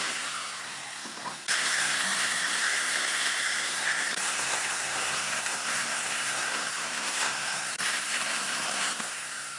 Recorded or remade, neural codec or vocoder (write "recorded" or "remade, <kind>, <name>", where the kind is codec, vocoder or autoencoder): remade, codec, SNAC